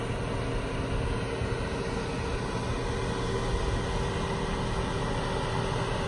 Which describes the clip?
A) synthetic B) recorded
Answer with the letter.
B